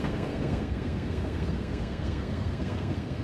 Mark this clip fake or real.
fake